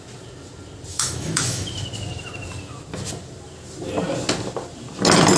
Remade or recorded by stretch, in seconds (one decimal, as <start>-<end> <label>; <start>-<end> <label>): 0.0-0.9 recorded; 0.9-1.7 remade; 1.7-5.4 recorded